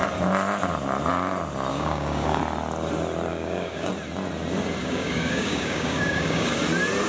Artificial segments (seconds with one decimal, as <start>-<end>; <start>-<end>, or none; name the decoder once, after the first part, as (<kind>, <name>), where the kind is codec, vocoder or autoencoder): 1.7-2.4 (codec, DAC); 3.3-3.9; 4.8-6.6